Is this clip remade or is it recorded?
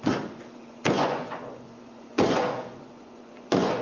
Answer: remade